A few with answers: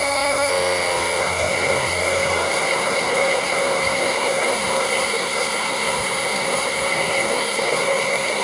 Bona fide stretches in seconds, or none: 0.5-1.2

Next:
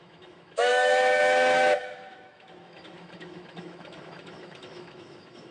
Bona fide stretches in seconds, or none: none

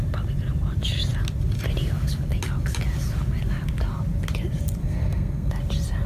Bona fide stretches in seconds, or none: 0.0-4.8; 5.5-6.1